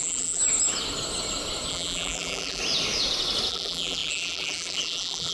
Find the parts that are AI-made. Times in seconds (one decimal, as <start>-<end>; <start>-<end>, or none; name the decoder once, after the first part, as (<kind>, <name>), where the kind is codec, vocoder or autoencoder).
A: 0.0-0.4 (vocoder, BigVGAN v2); 1.7-2.6; 3.5-5.3

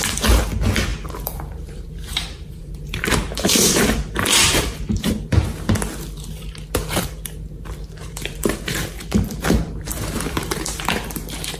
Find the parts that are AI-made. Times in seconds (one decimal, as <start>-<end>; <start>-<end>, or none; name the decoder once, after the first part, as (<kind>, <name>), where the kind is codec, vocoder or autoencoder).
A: 0.9-5.7 (vocoder, BigVGAN v2); 8.0-11.6

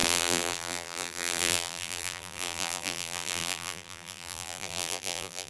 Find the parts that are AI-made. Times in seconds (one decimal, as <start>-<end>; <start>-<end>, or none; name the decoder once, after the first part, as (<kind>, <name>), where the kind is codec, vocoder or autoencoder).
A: 0.0-5.5 (vocoder, BigVGAN v2)

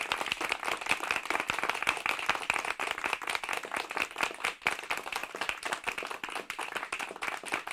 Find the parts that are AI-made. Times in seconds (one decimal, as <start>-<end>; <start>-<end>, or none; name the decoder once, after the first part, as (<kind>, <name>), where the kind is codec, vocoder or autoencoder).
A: 5.2-5.7 (vocoder, BigVGAN v2)

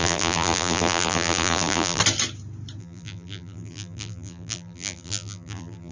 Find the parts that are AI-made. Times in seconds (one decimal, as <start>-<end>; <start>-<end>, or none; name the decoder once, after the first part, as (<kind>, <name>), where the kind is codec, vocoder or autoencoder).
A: 0.0-2.0 (vocoder, BigVGAN v2); 2.8-5.9

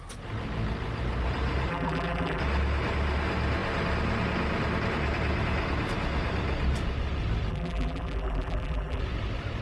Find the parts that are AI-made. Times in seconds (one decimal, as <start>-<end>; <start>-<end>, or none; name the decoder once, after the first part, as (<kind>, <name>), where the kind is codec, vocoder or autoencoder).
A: 1.7-2.4 (vocoder, BigVGAN v2); 7.5-9.0